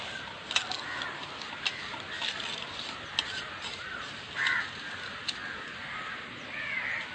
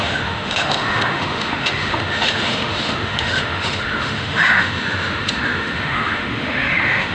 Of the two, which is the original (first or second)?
first